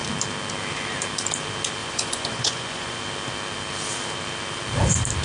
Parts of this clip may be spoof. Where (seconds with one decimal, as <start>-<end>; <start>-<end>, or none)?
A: 1.8-3.0